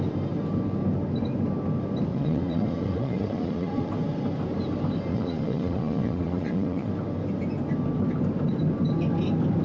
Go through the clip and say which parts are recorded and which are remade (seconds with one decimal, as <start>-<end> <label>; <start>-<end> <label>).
0.0-2.1 recorded; 2.1-3.9 remade; 3.9-5.1 recorded; 5.1-6.9 remade; 6.9-9.6 recorded